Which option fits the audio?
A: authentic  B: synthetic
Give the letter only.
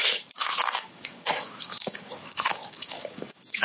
B